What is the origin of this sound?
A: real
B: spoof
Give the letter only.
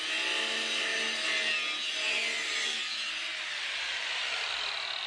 A